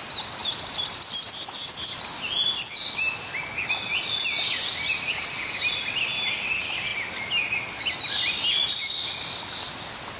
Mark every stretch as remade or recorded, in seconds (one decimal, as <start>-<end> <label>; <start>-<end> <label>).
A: 0.0-0.4 recorded; 0.4-2.0 remade; 2.0-10.2 recorded